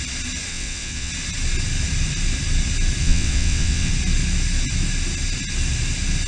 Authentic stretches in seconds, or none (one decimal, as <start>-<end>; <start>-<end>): 0.0-0.5; 1.1-3.0; 3.9-6.3